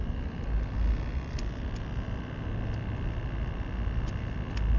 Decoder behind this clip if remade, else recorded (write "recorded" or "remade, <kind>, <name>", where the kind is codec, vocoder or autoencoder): recorded